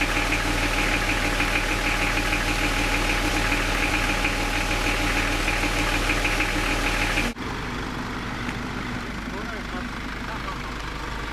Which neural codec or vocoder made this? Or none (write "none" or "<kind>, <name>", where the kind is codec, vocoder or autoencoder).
none